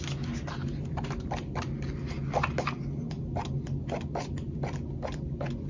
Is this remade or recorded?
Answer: recorded